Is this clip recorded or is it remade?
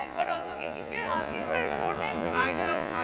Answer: remade